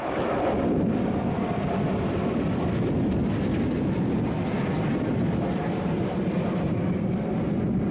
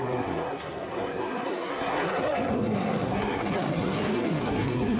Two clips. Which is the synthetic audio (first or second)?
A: second